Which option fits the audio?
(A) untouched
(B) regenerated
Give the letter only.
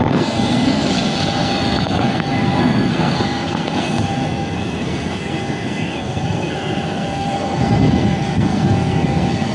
B